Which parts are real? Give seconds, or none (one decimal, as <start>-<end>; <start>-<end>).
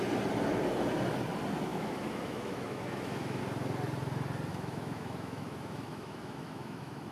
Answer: 0.0-1.7; 3.4-4.5